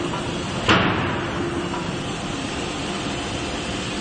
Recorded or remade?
recorded